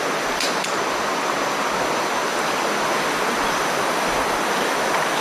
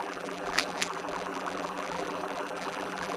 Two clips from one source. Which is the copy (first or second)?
second